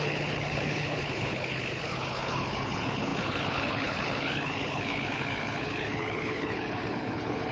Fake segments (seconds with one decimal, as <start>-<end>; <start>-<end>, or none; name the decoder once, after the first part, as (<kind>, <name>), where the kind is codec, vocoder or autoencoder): 0.0-7.5 (codec, HILCodec)